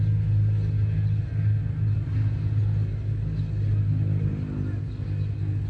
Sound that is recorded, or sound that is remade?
recorded